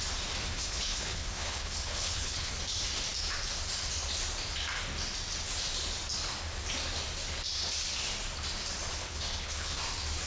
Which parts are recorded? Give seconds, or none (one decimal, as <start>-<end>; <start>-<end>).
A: 0.0-0.5; 2.5-9.0; 9.8-10.3